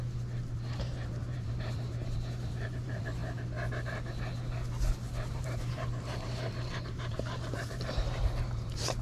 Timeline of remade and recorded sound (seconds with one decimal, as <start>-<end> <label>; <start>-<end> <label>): 0.0-3.2 remade; 3.2-5.3 recorded; 5.3-9.0 remade